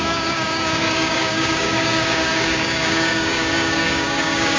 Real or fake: fake